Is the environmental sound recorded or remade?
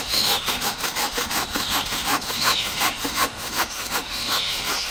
remade